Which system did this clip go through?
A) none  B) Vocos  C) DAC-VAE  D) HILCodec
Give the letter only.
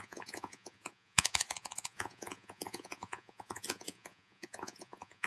B